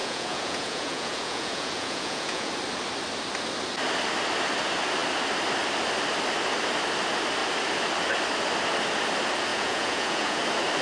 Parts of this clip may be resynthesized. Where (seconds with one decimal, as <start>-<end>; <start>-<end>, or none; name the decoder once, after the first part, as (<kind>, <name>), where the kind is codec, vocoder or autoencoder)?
0.0-2.5 (vocoder, Vocos); 9.5-10.4